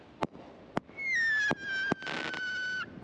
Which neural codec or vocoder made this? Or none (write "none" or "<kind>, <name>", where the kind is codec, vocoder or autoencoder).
none